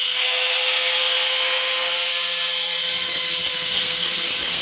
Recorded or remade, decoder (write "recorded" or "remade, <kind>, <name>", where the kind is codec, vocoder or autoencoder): remade, codec, SNAC